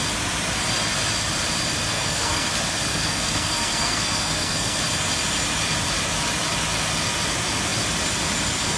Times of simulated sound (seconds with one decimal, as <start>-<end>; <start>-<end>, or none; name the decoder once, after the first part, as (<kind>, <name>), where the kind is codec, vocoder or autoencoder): 1.9-2.5 (codec, SNAC); 2.9-4.8